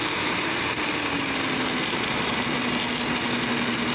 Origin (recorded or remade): recorded